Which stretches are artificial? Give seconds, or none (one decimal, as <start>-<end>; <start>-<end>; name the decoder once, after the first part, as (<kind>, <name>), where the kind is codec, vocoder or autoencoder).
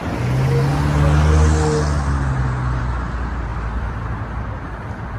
3.5-5.2 (vocoder, BigVGAN v2)